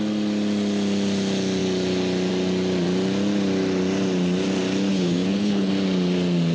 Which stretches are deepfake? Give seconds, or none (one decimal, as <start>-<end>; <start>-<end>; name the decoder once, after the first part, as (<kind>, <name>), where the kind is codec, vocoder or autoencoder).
4.9-5.7 (codec, HILCodec)